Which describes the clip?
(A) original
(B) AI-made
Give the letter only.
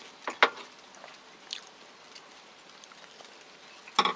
A